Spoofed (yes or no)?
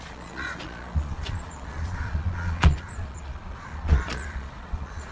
yes